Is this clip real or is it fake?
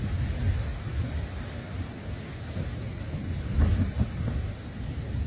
real